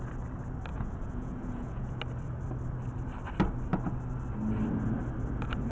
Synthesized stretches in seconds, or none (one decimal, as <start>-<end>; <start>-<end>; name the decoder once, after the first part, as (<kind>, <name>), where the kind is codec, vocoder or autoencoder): 0.7-2.0 (vocoder, Vocos)

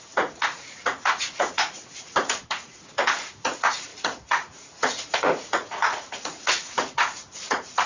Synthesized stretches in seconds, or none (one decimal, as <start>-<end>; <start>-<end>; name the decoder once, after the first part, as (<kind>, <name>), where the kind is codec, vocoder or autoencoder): 0.0-7.9 (vocoder, Vocos)

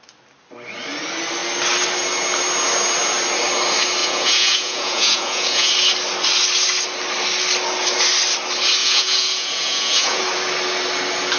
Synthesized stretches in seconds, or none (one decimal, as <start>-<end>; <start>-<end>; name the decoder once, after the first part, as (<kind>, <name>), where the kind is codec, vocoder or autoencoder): 4.0-5.7 (vocoder, Vocos); 8.8-10.2

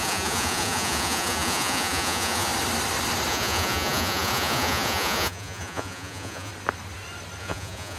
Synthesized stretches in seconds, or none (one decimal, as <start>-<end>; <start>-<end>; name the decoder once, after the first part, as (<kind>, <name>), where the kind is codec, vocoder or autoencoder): 0.0-2.5 (vocoder, Vocos); 3.3-6.5; 7.4-8.0

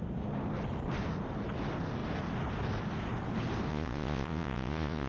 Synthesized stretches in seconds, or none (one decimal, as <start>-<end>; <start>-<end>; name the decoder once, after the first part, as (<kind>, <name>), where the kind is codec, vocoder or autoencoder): 3.7-5.1 (vocoder, Vocos)

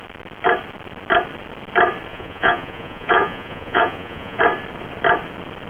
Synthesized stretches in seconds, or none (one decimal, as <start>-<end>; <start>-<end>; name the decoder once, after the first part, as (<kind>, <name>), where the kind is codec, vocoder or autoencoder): 2.1-4.4 (vocoder, Vocos)

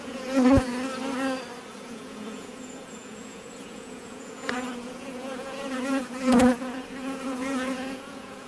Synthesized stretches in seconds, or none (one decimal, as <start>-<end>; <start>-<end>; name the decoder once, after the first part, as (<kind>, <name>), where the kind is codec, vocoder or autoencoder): 0.0-0.7 (vocoder, Vocos); 1.7-8.5